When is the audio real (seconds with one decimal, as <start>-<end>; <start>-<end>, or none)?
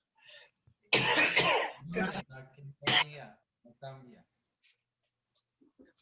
0.0-6.0